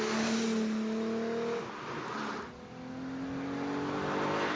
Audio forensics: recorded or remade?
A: recorded